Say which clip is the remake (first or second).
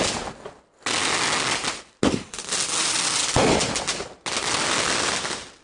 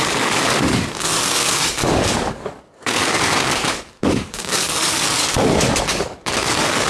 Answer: second